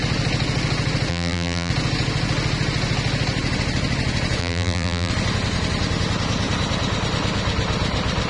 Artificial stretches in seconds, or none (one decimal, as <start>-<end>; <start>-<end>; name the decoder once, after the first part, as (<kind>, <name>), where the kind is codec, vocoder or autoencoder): 1.1-1.7 (vocoder, BigVGAN v2); 4.4-5.1